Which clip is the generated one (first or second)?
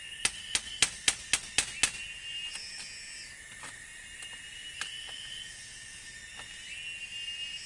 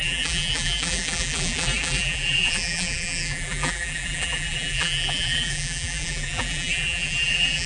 second